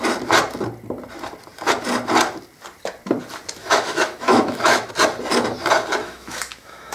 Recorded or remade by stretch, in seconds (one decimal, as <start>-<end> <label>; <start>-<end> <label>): 0.0-3.6 recorded; 3.6-4.9 remade; 4.9-6.0 recorded; 6.0-6.9 remade